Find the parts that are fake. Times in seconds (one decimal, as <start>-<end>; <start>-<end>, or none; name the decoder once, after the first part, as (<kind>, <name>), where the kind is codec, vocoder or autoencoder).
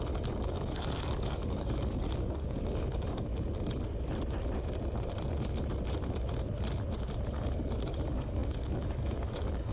0.0-3.3 (codec, DAC); 7.3-9.7